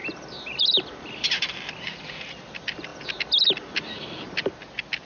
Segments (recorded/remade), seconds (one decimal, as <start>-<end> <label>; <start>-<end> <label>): 0.0-2.2 remade; 2.2-5.1 recorded